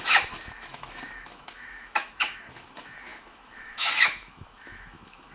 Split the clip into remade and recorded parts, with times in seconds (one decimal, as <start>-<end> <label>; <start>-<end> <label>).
0.0-5.3 remade

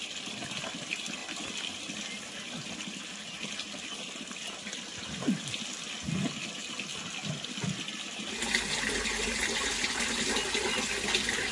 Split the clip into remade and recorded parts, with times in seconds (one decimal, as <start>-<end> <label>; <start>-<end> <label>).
0.0-11.5 recorded

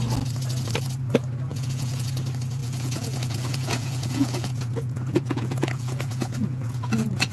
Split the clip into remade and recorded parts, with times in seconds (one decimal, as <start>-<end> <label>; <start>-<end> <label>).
0.0-1.5 recorded; 1.5-2.1 remade; 2.1-2.6 recorded; 2.6-7.3 remade

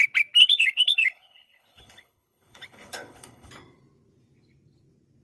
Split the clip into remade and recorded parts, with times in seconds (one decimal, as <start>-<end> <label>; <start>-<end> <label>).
0.0-0.4 recorded; 0.4-3.5 remade; 3.5-5.2 recorded